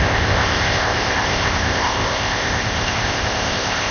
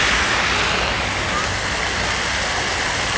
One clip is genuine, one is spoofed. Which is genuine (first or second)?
second